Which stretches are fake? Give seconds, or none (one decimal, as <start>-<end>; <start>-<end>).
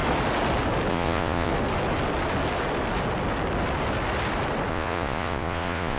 0.9-1.5; 4.7-6.0